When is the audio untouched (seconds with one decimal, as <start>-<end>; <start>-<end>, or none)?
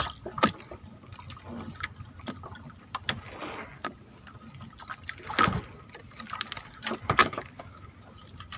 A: 0.0-7.2; 7.9-8.6